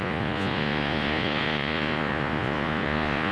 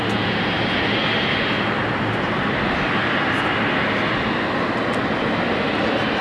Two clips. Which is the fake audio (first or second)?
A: first